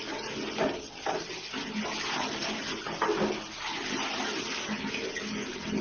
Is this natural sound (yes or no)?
yes